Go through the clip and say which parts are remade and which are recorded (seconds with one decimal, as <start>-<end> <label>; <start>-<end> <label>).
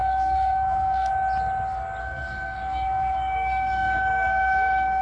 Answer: 0.0-1.1 remade; 1.1-2.0 recorded; 2.0-5.0 remade